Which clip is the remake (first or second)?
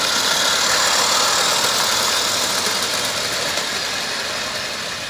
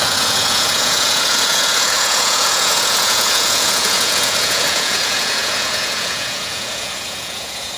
second